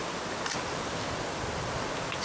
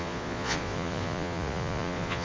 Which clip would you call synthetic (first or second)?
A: second